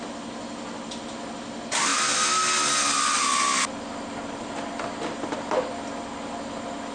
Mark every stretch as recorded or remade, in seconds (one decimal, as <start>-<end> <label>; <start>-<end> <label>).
0.0-6.9 recorded